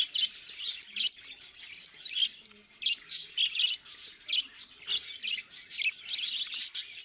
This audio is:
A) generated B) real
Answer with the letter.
B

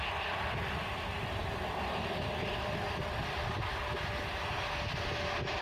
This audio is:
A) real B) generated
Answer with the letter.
A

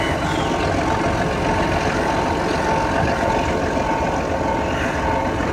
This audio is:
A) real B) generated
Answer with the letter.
A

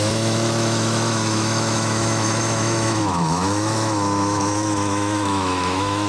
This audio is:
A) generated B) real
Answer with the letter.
A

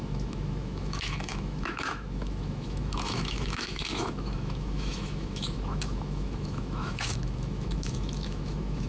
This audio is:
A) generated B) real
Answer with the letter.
A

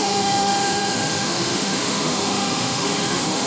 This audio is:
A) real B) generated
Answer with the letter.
B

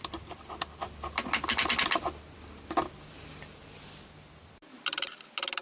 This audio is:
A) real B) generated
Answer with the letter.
A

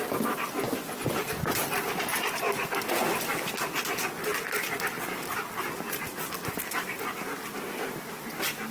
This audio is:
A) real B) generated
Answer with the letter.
A